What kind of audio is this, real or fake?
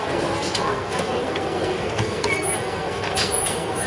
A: fake